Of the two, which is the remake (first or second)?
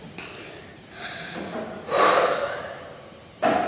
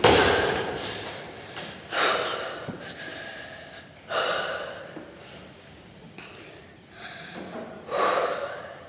second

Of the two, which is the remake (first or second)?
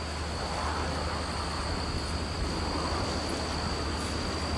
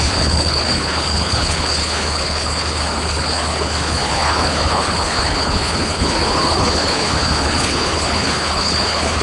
second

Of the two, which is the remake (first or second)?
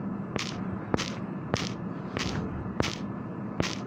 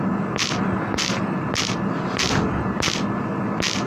first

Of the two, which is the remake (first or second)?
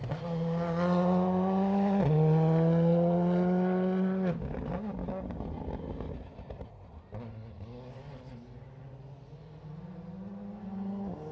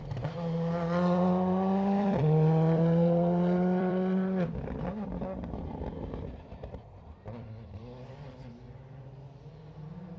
second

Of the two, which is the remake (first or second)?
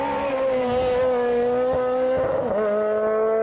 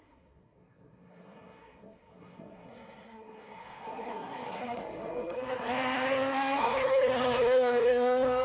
second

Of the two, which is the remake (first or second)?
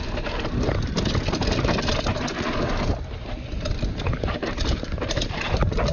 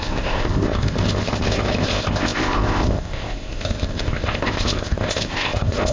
second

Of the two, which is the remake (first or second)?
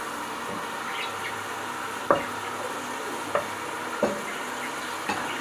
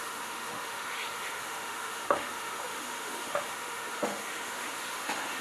second